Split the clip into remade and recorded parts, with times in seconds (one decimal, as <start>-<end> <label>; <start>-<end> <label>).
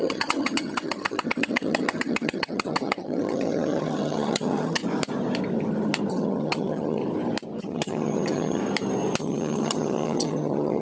0.0-4.8 remade; 4.8-6.1 recorded; 6.1-7.0 remade; 7.0-7.6 recorded; 7.6-8.6 remade; 8.6-9.2 recorded; 9.2-10.8 remade